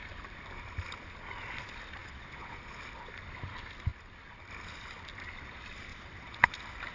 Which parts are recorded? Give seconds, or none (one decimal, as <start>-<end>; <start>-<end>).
0.0-2.0; 2.6-5.9; 6.5-6.9